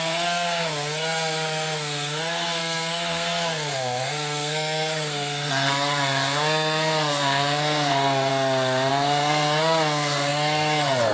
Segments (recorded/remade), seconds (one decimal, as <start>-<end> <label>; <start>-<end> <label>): 0.0-8.3 remade; 8.3-8.9 recorded; 8.9-11.1 remade